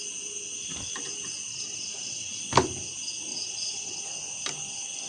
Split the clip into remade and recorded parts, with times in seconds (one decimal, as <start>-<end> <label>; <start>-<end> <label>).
0.0-1.5 recorded; 1.5-2.4 remade; 2.4-3.3 recorded; 3.3-4.0 remade; 4.0-5.1 recorded